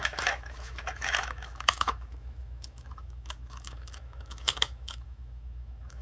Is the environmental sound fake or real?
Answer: fake